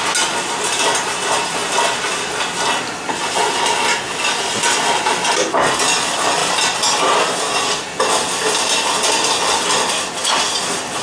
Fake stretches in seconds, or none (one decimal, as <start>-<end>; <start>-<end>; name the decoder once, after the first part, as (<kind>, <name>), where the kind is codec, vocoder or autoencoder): none